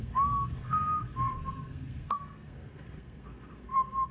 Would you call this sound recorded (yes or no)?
no